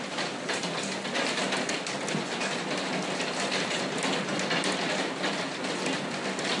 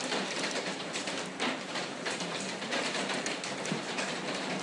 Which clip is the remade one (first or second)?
second